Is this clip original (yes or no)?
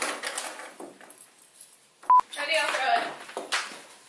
yes